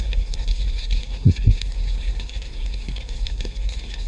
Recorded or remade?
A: remade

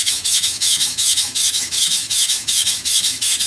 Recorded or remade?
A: remade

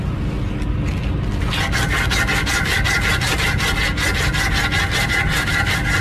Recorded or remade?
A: recorded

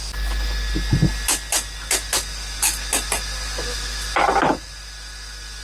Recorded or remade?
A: recorded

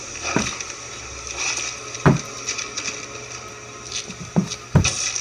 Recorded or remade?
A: recorded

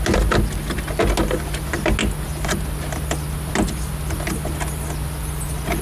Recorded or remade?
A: recorded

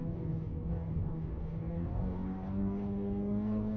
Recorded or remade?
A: remade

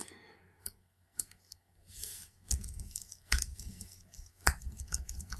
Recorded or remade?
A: remade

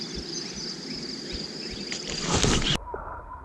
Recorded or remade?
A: recorded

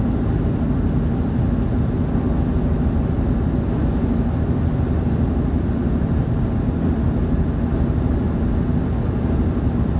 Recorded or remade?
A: recorded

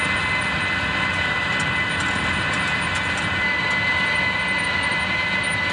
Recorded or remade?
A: recorded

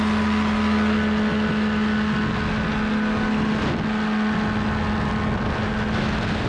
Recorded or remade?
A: recorded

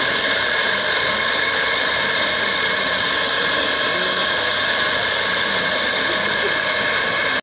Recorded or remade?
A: recorded